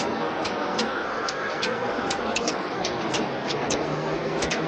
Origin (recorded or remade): remade